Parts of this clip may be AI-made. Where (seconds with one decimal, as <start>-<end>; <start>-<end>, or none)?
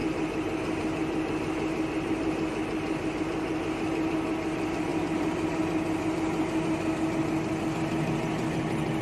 none